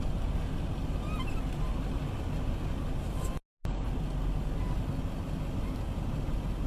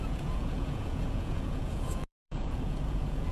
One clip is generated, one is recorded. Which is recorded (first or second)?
first